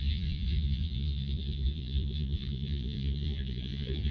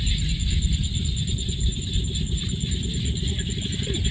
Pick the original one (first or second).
second